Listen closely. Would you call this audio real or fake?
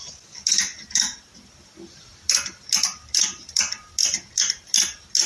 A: real